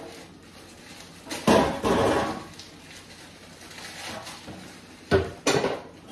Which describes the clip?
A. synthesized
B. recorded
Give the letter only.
B